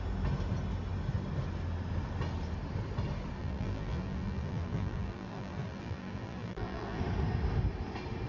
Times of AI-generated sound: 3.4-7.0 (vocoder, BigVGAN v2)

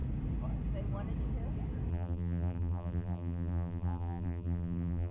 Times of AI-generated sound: 1.9-5.1 (vocoder, BigVGAN v2)

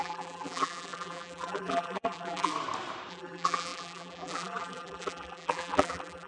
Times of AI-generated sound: 0.0-2.5 (vocoder, BigVGAN v2); 3.1-6.3

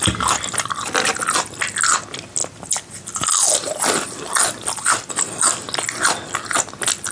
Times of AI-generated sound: 2.4-5.1 (vocoder, BigVGAN v2)

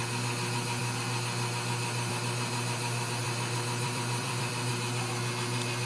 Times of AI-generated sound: 3.2-4.7 (vocoder, BigVGAN v2)

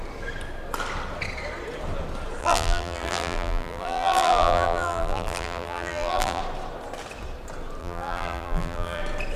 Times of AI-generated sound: 2.4-6.4 (vocoder, BigVGAN v2); 7.8-9.0